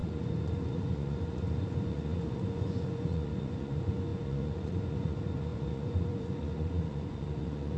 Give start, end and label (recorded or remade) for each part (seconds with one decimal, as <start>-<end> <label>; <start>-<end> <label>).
0.0-7.8 remade

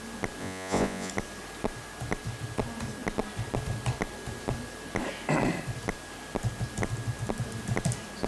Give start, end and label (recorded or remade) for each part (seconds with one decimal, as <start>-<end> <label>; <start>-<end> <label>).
0.0-0.4 recorded; 0.4-1.1 remade; 1.1-8.3 recorded

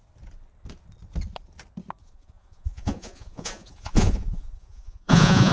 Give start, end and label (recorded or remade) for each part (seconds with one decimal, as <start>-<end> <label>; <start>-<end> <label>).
0.0-2.0 recorded; 2.0-5.5 remade

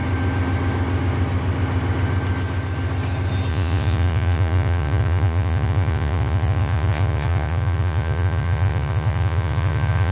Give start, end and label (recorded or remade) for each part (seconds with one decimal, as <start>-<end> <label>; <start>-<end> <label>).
0.0-3.5 recorded; 3.5-10.1 remade

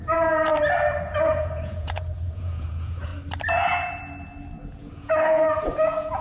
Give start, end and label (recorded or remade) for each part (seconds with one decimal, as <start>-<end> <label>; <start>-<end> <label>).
0.0-0.5 remade; 0.5-1.1 recorded; 1.1-3.1 remade; 3.1-4.7 recorded; 4.7-6.2 remade

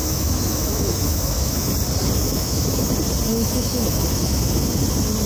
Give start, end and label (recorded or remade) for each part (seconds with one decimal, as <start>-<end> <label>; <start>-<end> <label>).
0.0-1.7 remade; 1.7-2.2 recorded; 2.2-2.9 remade; 2.9-3.3 recorded; 3.3-4.7 remade; 4.7-5.3 recorded

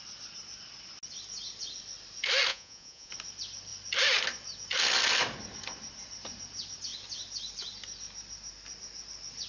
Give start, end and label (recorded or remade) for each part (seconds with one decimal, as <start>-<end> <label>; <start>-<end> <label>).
0.0-2.5 recorded; 2.5-3.1 remade; 3.1-9.5 recorded

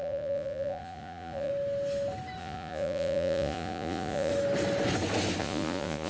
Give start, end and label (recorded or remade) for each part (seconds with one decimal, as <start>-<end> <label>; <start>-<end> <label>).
0.0-1.5 remade; 1.5-2.4 recorded; 2.4-4.3 remade; 4.3-5.4 recorded; 5.4-6.1 remade